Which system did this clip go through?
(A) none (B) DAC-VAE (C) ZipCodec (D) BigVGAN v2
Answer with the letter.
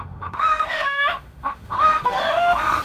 B